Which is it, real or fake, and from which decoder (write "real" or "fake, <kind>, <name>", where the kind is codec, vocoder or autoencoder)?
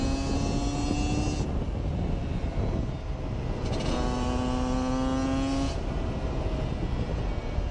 real